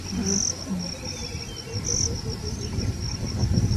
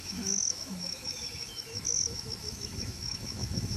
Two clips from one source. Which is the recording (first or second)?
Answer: first